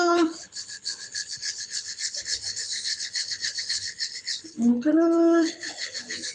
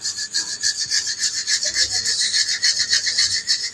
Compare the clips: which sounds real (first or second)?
second